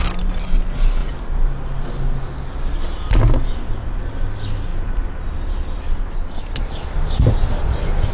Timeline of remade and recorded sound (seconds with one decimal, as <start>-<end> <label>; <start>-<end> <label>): 0.0-8.1 recorded